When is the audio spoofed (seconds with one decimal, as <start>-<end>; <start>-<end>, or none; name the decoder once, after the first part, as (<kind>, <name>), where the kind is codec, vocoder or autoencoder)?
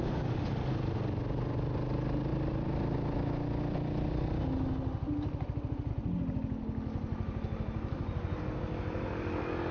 none